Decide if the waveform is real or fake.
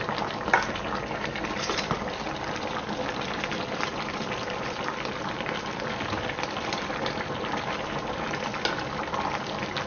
real